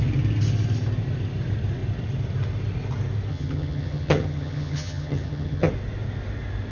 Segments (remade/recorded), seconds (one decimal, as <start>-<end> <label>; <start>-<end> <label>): 0.0-3.3 recorded; 3.3-5.7 remade; 5.7-6.7 recorded